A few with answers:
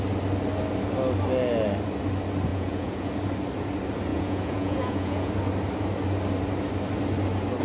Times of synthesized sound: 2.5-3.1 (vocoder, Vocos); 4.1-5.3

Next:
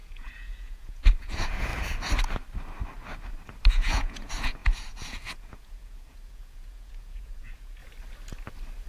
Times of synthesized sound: 0.0-1.7 (vocoder, Vocos); 3.7-7.8

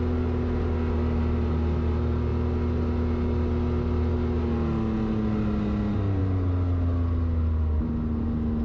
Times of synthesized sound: none

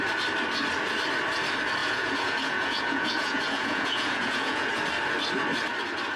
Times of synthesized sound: 1.8-4.7 (vocoder, Vocos)